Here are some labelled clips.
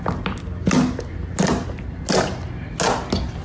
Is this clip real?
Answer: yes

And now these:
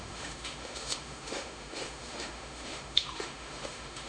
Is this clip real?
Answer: no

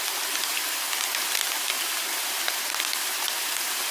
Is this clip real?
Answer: yes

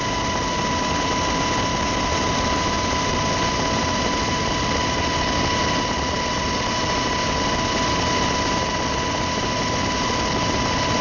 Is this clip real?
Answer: yes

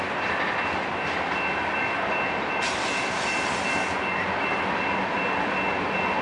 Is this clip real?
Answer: yes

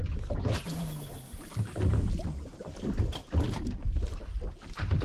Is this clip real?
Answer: yes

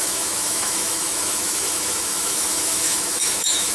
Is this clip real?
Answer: no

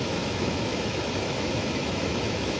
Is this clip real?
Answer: no